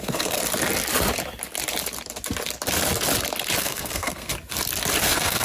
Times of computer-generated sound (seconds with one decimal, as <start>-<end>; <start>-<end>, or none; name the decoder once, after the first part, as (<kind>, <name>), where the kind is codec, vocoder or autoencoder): 0.0-0.4 (codec, SNAC); 3.6-4.3; 5.0-5.4